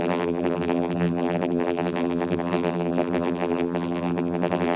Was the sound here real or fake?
fake